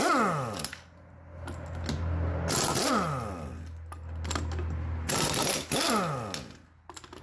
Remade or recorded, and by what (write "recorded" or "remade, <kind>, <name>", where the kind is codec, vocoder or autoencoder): recorded